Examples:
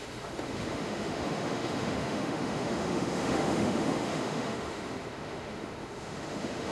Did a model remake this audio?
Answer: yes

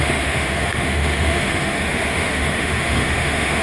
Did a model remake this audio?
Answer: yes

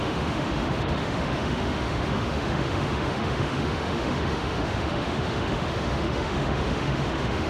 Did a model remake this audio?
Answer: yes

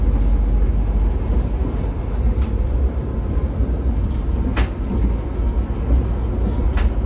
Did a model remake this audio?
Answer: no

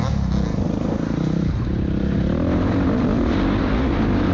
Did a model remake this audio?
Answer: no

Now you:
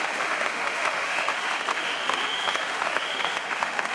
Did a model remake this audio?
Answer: yes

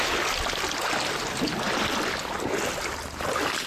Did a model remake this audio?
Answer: no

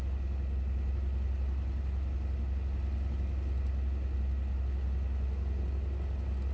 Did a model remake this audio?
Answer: no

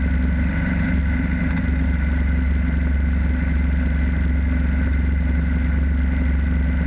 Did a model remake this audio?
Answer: no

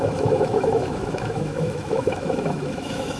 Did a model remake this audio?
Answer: yes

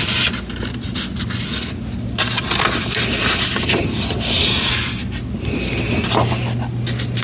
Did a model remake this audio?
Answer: no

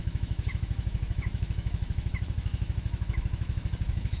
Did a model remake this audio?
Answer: yes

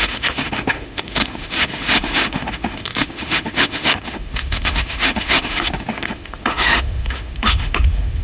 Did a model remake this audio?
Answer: yes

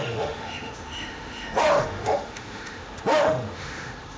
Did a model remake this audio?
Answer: yes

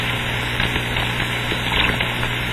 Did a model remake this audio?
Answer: no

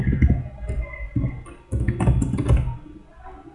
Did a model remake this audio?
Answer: no